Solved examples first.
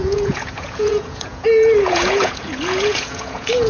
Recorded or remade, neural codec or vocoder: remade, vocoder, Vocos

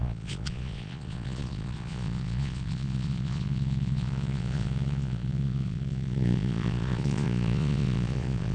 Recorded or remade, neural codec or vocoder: remade, vocoder, Vocos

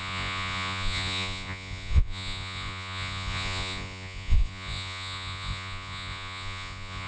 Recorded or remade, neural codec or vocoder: remade, vocoder, Vocos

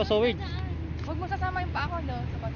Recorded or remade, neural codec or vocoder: recorded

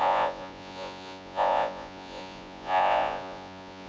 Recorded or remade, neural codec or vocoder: remade, vocoder, Vocos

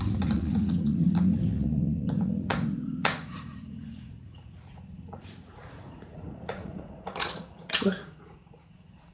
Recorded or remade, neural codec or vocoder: remade, vocoder, Vocos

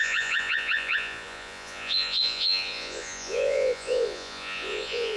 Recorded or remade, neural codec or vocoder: remade, vocoder, Vocos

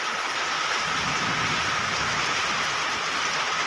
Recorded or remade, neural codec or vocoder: recorded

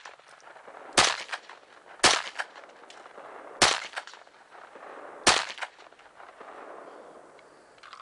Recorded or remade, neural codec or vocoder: recorded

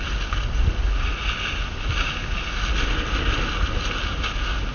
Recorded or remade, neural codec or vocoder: recorded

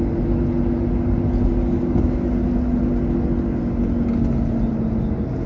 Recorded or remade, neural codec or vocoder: recorded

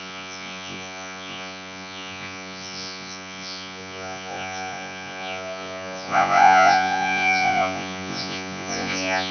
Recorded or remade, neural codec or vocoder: remade, vocoder, Vocos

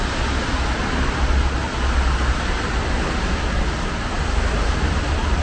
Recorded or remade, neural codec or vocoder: recorded